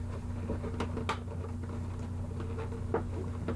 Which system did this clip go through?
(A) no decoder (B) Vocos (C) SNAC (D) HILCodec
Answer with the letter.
A